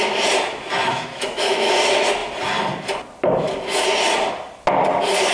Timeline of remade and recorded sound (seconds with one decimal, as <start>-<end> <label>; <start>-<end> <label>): 0.0-0.9 recorded; 0.9-1.7 remade; 1.7-5.3 recorded